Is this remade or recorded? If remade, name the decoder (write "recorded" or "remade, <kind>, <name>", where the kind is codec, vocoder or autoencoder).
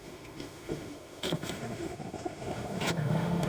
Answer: remade, autoencoder, DAC-VAE